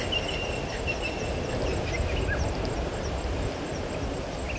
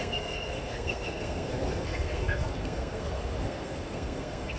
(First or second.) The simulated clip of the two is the second